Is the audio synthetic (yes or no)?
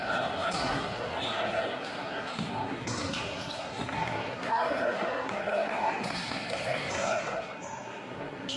yes